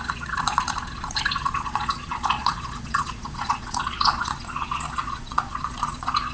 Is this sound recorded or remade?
remade